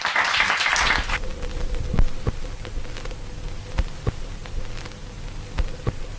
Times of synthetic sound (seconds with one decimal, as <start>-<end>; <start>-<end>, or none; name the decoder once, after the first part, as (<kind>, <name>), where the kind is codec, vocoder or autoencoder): none

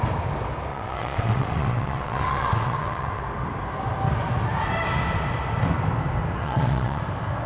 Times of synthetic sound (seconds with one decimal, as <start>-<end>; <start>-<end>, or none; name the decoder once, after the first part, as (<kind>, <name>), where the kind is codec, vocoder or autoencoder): 0.7-3.2 (vocoder, WaveNeXt); 6.4-7.0

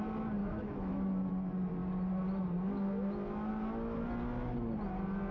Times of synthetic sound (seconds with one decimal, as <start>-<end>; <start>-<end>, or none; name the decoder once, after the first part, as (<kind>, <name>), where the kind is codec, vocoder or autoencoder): 0.4-1.3 (autoencoder, DAC-VAE)

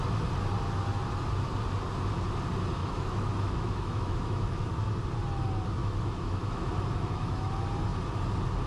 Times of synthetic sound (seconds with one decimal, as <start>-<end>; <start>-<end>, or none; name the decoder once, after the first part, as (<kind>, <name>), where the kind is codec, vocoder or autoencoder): 2.8-4.7 (autoencoder, DAC-VAE); 5.8-7.5